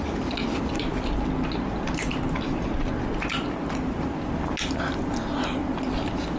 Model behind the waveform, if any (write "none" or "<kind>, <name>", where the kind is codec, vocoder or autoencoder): none